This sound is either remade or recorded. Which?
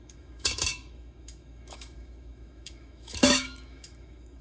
remade